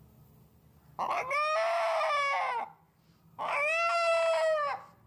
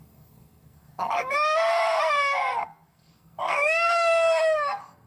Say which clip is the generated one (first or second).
second